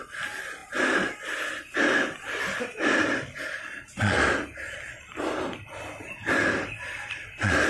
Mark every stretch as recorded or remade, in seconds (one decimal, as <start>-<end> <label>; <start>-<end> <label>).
0.0-7.7 recorded